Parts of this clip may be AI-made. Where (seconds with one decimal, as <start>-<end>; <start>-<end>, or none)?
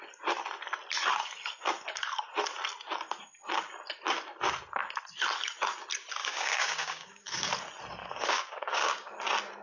6.2-7.5; 8.0-9.2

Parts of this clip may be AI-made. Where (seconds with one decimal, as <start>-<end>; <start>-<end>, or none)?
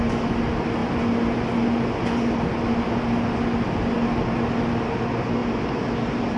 none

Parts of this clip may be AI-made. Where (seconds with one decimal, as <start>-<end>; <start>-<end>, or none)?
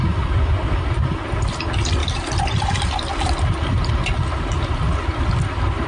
none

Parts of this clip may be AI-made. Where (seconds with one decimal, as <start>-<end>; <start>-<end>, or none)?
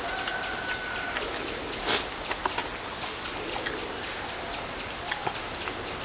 none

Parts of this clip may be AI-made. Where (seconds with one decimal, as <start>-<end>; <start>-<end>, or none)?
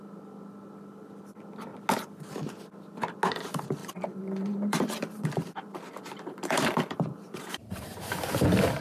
3.8-8.8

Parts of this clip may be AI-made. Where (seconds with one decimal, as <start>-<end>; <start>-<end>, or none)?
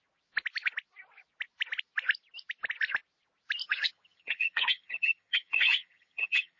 3.6-6.6